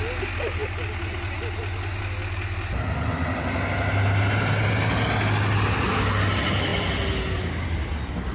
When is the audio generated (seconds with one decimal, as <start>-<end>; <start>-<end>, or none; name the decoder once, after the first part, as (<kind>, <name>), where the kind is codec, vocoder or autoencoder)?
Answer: none